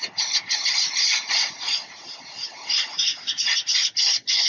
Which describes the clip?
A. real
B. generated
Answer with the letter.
A